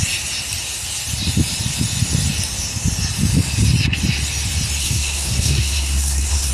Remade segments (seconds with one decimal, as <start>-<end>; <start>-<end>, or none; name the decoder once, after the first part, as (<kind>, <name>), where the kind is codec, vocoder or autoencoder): 4.8-6.5 (codec, SNAC)